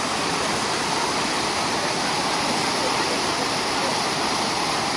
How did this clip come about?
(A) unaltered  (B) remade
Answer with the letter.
A